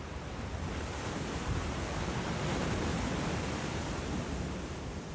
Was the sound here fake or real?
fake